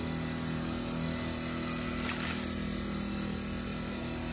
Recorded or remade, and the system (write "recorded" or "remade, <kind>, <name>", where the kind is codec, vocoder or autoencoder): recorded